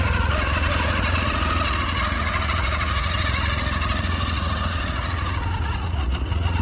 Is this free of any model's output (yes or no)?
no